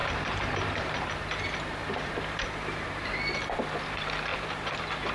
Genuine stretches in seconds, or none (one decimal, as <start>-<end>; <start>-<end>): 1.0-1.8; 2.9-4.3

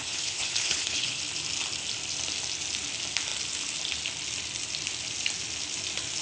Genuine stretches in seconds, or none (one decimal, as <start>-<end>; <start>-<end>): 1.2-6.2

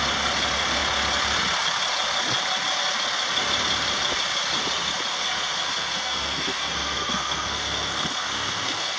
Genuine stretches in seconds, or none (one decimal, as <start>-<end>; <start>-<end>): 0.0-5.1

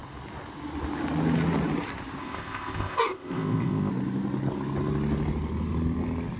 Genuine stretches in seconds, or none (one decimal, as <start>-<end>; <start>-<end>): 0.0-2.2; 3.9-6.4

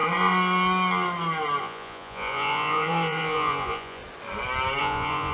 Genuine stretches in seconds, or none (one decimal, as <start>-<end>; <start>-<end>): 0.0-1.6; 4.0-4.8

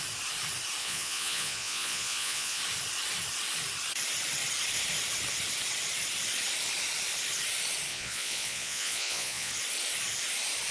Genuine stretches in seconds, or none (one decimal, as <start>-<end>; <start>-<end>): 0.0-0.8; 2.6-7.9; 9.5-10.7

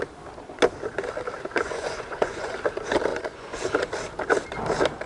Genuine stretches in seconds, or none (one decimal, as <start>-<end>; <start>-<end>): 0.0-1.5; 2.5-3.1; 3.7-5.1

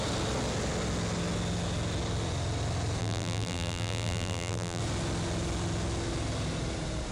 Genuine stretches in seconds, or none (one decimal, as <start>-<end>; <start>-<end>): 0.0-3.0; 4.8-7.1